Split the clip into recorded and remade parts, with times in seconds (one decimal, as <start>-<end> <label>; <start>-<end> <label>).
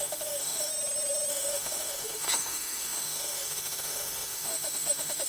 0.0-0.7 remade; 0.7-1.3 recorded; 1.3-5.3 remade